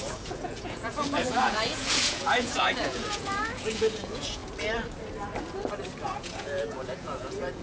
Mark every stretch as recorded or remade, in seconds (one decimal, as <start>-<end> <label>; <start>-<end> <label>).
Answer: 0.0-4.4 remade; 4.4-6.0 recorded; 6.0-7.6 remade